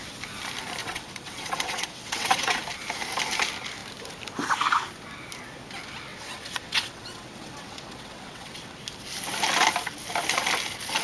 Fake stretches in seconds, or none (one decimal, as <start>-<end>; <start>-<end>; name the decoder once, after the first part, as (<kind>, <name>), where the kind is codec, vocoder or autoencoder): 0.8-2.6 (vocoder, WaveNeXt); 6.1-8.8